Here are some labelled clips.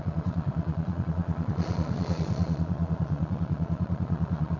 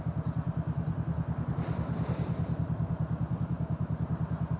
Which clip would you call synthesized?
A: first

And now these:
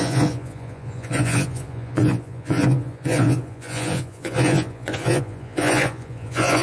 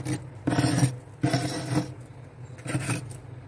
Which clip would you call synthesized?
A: first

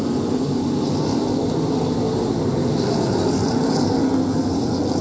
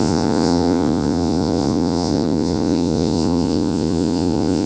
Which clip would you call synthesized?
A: second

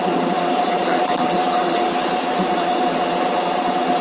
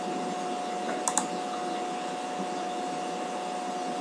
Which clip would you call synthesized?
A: first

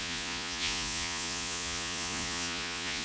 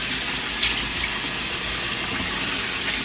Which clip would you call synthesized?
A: first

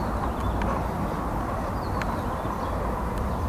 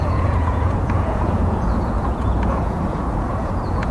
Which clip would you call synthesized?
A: second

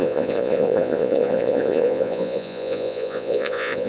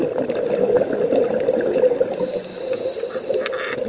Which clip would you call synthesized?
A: first